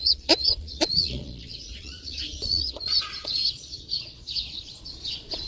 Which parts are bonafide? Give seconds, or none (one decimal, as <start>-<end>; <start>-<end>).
none